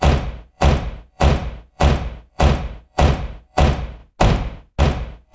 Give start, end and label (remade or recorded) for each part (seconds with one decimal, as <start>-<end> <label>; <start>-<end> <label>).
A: 0.0-4.0 remade; 4.0-4.8 recorded; 4.8-5.3 remade